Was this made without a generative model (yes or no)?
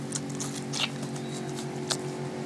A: yes